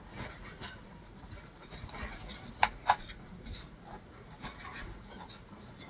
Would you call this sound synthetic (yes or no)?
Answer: yes